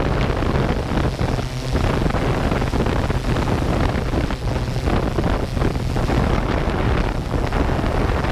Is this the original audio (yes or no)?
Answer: yes